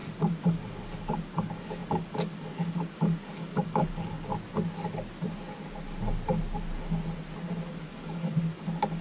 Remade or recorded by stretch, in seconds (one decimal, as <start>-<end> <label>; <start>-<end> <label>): 0.0-4.3 remade; 4.3-7.7 recorded; 7.7-9.0 remade